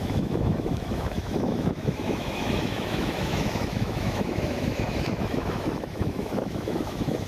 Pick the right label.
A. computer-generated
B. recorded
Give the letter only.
A